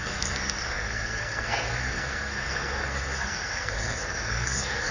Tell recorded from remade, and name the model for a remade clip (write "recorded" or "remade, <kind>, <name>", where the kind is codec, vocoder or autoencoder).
remade, codec, SNAC